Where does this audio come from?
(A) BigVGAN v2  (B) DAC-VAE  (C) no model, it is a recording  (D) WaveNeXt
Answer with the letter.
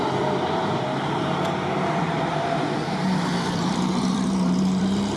A